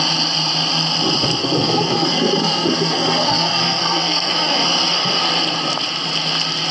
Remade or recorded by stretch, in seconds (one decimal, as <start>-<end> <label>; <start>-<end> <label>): 0.0-1.4 recorded; 1.4-5.3 remade; 5.3-6.7 recorded